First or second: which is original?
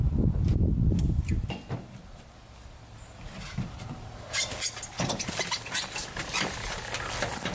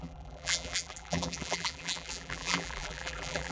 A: first